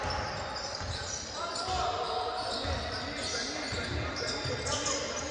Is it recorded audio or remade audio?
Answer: recorded